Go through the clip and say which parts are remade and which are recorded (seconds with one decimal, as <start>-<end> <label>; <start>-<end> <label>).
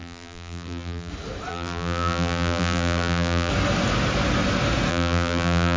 0.0-1.1 remade; 1.1-1.5 recorded; 1.5-3.5 remade; 3.5-4.9 recorded; 4.9-5.8 remade